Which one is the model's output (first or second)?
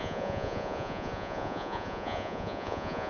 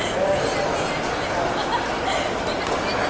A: first